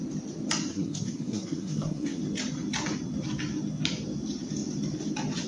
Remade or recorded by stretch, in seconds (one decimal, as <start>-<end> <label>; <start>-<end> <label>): 0.0-0.7 recorded; 0.7-2.2 remade; 2.2-5.5 recorded

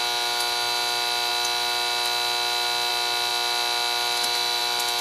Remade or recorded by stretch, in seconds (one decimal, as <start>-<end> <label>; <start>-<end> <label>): 0.0-5.0 recorded

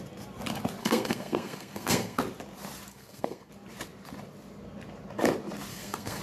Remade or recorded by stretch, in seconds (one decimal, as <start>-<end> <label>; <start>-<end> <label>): 0.0-0.8 recorded; 0.8-2.2 remade; 2.2-2.9 recorded; 2.9-3.5 remade; 3.5-5.7 recorded; 5.7-6.2 remade

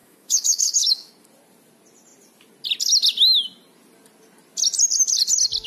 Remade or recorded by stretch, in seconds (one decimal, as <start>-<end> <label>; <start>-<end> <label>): 0.0-1.1 remade; 1.1-5.7 recorded

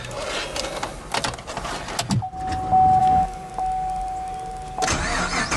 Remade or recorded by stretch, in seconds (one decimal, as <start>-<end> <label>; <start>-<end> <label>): 0.0-3.0 recorded; 3.0-3.5 remade; 3.5-5.6 recorded

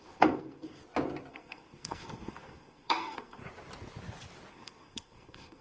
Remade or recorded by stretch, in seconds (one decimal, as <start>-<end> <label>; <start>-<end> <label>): 0.0-0.8 remade; 0.8-1.3 recorded; 1.3-3.4 remade; 3.4-4.5 recorded; 4.5-5.6 remade

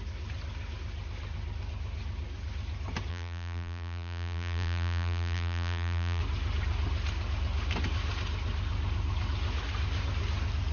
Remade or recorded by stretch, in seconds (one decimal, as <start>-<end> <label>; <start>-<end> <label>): 0.0-3.1 recorded; 3.1-6.2 remade; 6.2-10.7 recorded

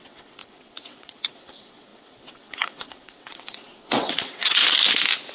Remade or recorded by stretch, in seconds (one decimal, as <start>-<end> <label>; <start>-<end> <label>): 0.0-4.6 remade; 4.6-5.3 recorded